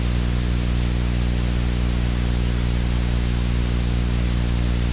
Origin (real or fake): real